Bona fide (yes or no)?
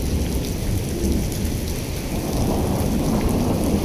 yes